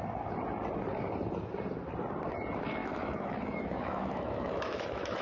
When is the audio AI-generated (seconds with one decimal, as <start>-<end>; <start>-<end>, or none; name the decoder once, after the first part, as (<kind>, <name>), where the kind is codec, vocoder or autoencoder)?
2.8-5.2 (autoencoder, DAC-VAE)